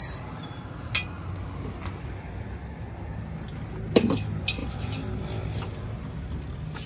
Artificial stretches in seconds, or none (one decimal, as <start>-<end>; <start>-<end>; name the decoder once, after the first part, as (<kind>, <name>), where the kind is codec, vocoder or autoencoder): 4.6-5.8 (vocoder, BigVGAN v2)